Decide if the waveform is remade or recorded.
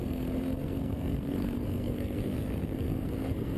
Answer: remade